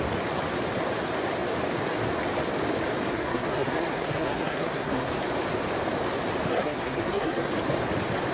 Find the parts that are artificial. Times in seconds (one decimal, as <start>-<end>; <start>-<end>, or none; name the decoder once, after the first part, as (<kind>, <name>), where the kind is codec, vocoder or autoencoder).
3.1-5.1 (codec, SNAC); 6.5-7.5